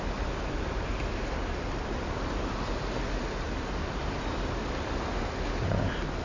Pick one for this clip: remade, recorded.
recorded